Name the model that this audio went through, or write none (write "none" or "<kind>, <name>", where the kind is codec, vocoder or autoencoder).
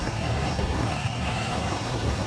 codec, SNAC